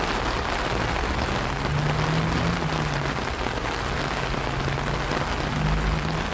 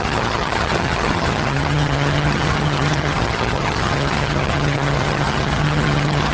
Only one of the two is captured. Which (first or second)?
first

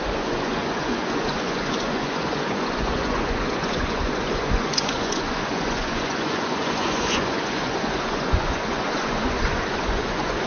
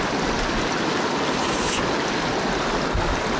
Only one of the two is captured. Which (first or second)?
second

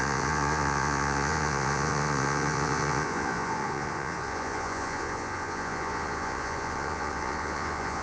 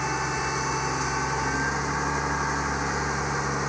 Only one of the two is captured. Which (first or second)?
second